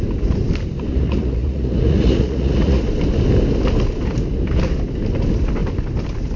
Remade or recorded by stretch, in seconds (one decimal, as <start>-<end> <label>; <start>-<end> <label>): 0.0-0.9 recorded; 0.9-2.8 remade; 2.8-6.4 recorded

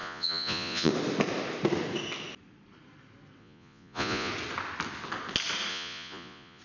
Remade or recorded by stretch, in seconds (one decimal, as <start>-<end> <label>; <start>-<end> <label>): 0.0-0.9 remade; 0.9-3.4 recorded; 3.4-4.3 remade; 4.3-5.7 recorded; 5.7-6.6 remade

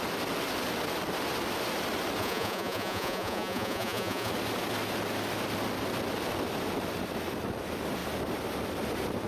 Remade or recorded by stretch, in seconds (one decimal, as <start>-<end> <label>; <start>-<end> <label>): 0.0-2.2 recorded; 2.2-4.3 remade; 4.3-9.3 recorded